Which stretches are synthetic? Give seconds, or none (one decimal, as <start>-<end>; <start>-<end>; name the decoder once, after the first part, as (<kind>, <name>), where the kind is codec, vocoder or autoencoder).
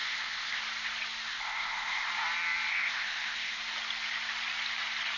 0.0-0.6 (codec, ZipCodec); 1.3-2.1; 2.7-3.6